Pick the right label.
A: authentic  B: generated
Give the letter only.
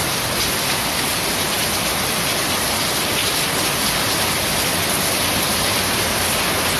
A